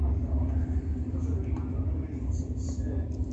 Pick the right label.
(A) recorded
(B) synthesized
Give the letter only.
A